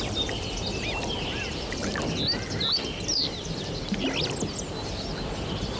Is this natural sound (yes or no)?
yes